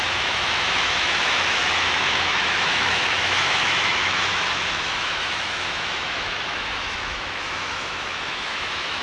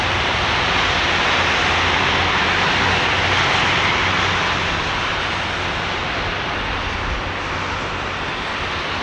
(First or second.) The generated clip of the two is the first